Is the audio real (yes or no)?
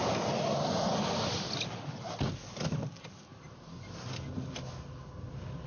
yes